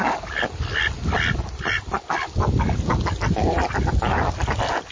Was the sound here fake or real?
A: real